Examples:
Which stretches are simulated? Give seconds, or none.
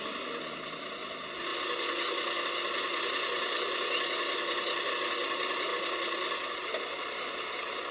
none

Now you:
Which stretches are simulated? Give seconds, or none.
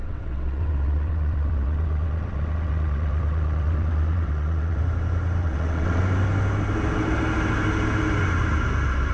0.0-4.8; 5.4-6.0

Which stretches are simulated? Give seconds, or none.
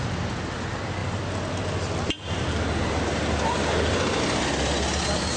none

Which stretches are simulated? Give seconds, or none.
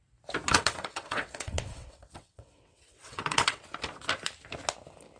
0.5-3.6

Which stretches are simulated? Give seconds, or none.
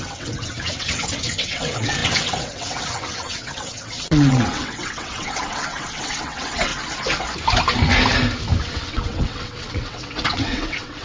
0.0-6.7; 8.6-11.0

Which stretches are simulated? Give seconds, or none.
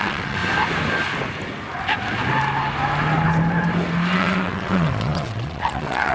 0.0-0.4; 4.1-6.1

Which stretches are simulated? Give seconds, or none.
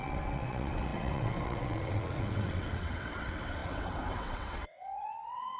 0.0-5.6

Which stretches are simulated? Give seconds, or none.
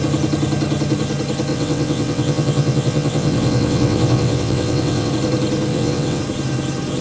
1.5-5.1; 5.7-6.2